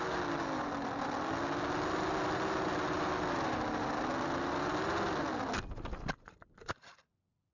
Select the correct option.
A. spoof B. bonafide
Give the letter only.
B